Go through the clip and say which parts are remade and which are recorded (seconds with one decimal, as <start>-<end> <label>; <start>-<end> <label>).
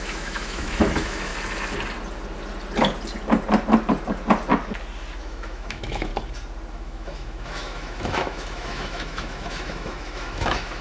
0.0-1.3 remade; 1.3-5.2 recorded; 5.2-6.1 remade; 6.1-6.7 recorded; 6.7-10.8 remade